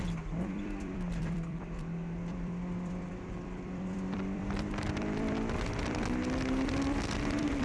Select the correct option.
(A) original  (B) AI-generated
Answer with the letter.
B